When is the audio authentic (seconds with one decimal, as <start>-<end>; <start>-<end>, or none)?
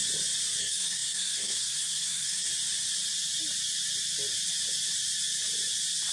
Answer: 0.0-0.6; 2.5-6.1